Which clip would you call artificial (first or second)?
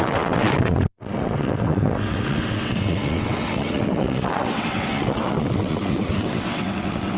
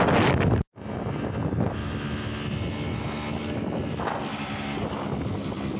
first